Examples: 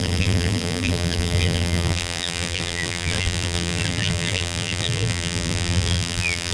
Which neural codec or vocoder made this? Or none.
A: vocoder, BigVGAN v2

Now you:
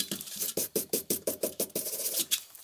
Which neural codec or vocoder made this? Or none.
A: vocoder, BigVGAN v2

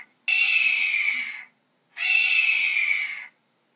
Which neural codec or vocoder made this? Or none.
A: none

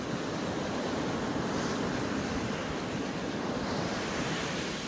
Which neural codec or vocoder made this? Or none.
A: vocoder, BigVGAN v2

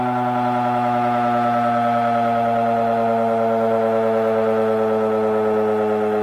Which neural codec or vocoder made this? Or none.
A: none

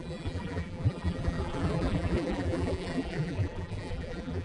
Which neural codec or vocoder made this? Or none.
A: vocoder, BigVGAN v2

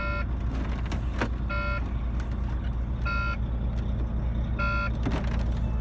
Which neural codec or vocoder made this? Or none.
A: none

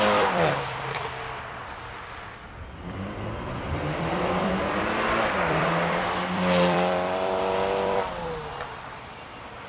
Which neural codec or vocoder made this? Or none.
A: vocoder, BigVGAN v2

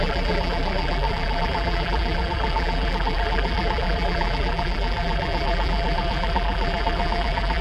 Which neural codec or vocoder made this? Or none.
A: vocoder, BigVGAN v2